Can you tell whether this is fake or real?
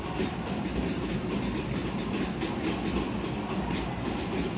real